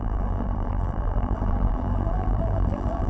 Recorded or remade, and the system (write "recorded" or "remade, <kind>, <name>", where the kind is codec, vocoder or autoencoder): remade, vocoder, BigVGAN v2